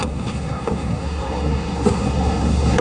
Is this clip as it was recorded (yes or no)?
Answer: no